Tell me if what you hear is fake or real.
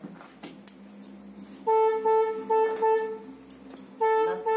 real